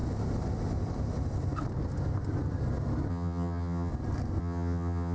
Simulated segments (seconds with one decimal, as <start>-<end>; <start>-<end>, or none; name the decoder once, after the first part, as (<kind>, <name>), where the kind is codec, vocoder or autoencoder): 3.1-3.9 (vocoder, HiFi-GAN); 4.4-5.1